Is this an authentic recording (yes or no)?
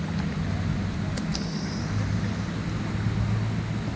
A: yes